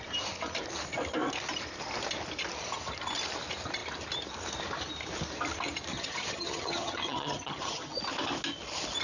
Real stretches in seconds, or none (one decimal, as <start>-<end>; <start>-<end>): 0.0-5.9; 8.0-9.0